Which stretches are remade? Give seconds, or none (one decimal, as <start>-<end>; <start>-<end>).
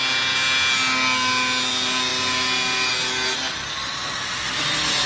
none